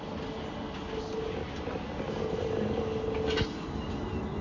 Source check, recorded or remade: recorded